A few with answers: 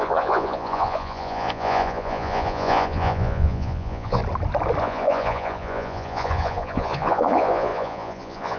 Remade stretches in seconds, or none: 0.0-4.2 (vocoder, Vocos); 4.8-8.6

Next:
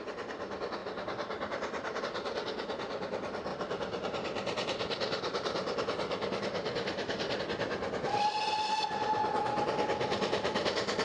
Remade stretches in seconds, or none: 0.8-2.0 (vocoder, BigVGAN v2); 3.5-7.4